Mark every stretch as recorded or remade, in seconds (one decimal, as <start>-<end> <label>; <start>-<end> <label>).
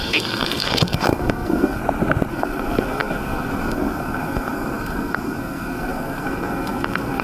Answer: 0.0-1.8 remade; 1.8-2.3 recorded; 2.3-7.2 remade